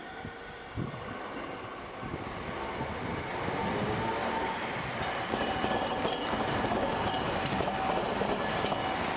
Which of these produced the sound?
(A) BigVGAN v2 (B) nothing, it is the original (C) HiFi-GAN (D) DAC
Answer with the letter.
B